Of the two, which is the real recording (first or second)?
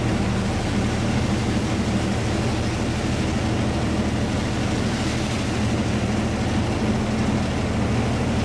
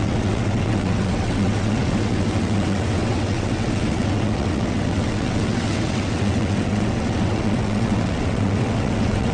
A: first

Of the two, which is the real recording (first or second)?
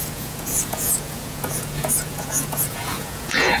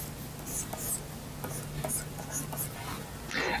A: second